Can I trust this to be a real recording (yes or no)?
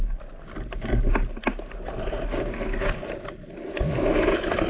yes